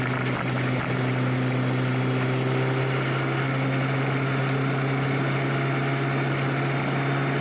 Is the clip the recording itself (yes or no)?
yes